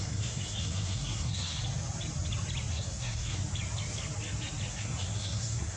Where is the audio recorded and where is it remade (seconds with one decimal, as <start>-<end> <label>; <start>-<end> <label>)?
0.0-1.6 remade; 1.6-2.7 recorded; 2.7-3.4 remade; 3.4-4.7 recorded; 4.7-5.8 remade